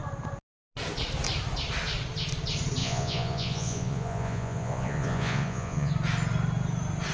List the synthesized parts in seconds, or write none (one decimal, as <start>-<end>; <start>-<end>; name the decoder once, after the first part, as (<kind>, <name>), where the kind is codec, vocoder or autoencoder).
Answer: 2.8-5.9 (vocoder, Vocos)